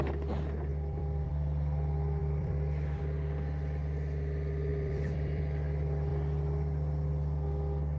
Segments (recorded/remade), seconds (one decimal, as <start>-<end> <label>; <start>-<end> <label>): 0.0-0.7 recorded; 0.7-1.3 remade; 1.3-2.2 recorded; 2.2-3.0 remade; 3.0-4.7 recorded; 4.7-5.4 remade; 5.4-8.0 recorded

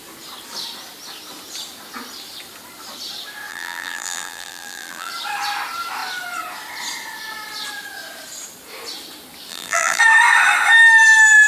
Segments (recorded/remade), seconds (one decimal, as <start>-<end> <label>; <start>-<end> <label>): 0.0-3.5 recorded; 3.5-5.1 remade; 5.1-9.5 recorded; 9.5-10.0 remade; 10.0-11.5 recorded

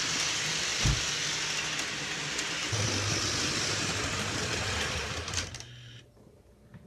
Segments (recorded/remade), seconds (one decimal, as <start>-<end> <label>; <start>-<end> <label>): 0.0-2.6 recorded; 2.6-6.0 remade; 6.0-6.9 recorded

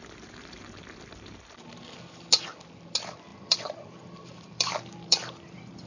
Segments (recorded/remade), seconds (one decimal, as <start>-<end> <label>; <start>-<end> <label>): 0.0-3.3 recorded; 3.3-5.9 remade